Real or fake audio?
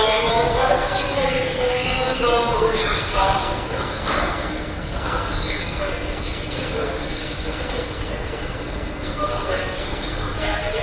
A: fake